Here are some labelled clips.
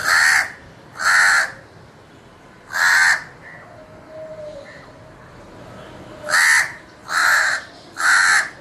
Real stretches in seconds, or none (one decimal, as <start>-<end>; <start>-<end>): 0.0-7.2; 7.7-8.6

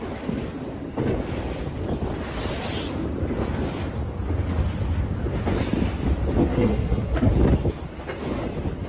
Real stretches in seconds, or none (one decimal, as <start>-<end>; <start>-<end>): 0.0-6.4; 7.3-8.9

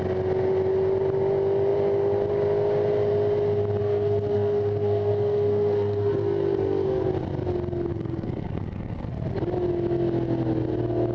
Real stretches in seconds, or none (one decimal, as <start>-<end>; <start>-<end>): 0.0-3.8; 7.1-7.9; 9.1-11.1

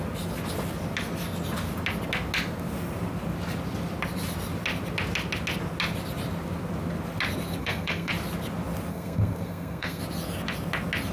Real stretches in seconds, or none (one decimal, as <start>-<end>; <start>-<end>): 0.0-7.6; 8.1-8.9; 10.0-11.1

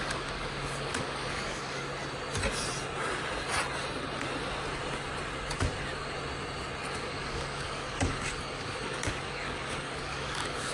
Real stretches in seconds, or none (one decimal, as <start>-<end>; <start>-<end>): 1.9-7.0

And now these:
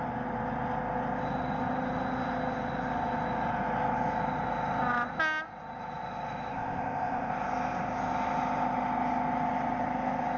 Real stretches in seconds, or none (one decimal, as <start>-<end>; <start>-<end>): 0.0-6.5; 7.3-10.4

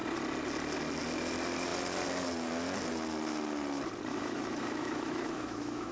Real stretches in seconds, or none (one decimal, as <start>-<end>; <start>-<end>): 0.0-4.1

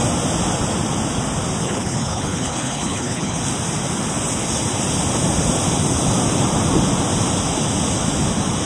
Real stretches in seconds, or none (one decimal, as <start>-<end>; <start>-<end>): 0.0-1.6; 3.4-8.7